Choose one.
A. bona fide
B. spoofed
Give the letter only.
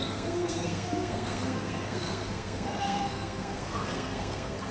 B